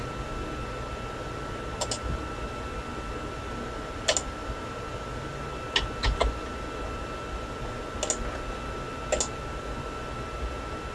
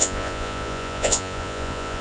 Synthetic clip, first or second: second